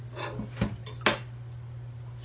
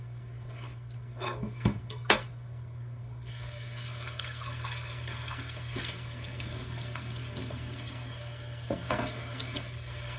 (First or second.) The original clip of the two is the first